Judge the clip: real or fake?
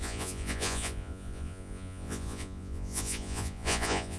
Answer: fake